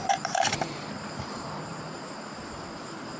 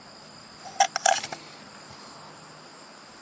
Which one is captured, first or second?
second